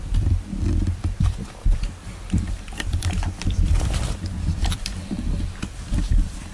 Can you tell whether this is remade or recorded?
remade